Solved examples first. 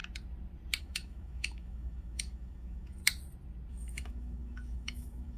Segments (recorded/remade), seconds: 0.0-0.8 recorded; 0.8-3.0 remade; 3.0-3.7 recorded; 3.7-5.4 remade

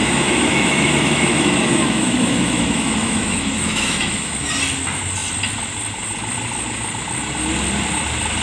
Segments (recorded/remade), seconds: 0.0-4.5 remade; 4.5-8.4 recorded

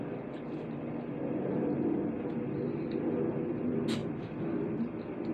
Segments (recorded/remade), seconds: 0.0-5.3 recorded

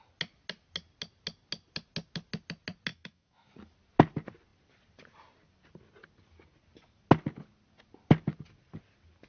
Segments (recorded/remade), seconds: 0.0-2.9 recorded; 2.9-3.5 remade; 3.5-9.3 recorded

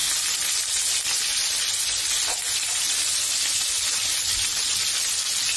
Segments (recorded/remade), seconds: 0.0-5.6 recorded

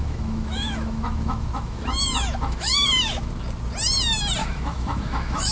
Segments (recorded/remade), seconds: 0.0-3.3 remade; 3.3-4.4 recorded; 4.4-5.5 remade

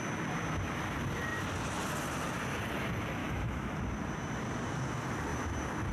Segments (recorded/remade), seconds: 0.0-3.2 recorded; 3.2-3.8 remade; 3.8-5.9 recorded